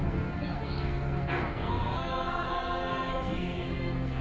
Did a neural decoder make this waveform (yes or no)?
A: yes